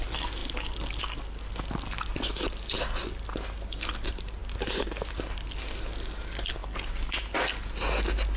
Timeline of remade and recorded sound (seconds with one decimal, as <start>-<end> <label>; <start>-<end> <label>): 0.0-8.4 recorded